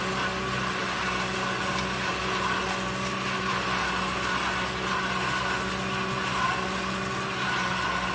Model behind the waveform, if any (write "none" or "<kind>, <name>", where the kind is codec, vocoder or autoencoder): none